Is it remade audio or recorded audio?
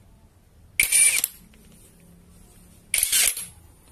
recorded